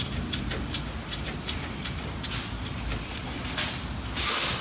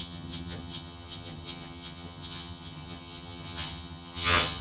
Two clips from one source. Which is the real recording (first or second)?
first